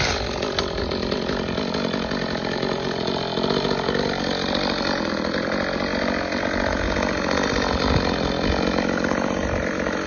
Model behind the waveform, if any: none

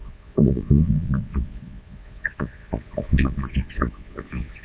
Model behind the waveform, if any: vocoder, Vocos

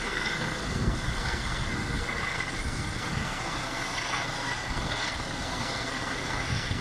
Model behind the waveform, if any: codec, SNAC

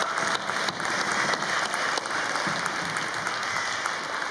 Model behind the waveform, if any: none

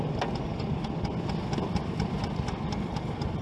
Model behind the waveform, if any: none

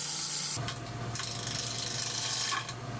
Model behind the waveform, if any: none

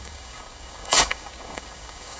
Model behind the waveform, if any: codec, DAC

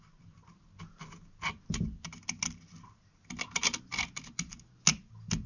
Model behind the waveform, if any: none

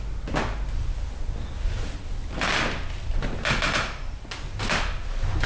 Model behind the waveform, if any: none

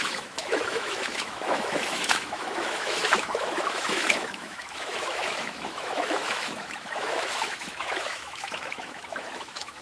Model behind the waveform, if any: autoencoder, DAC-VAE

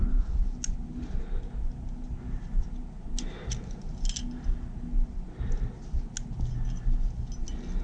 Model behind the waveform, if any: none